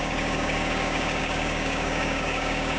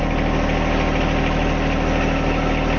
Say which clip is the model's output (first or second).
first